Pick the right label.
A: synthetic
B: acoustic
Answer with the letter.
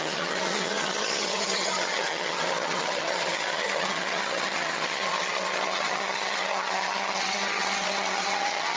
A